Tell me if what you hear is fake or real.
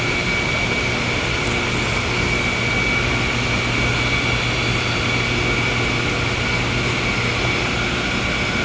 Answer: real